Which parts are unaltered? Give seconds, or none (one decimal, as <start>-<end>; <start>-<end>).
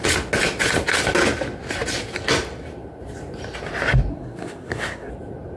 0.0-4.1; 5.1-5.6